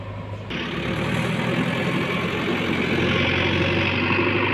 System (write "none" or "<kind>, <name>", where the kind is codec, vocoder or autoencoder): none